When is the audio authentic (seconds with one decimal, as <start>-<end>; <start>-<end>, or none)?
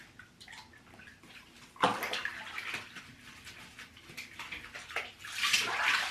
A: 0.0-6.1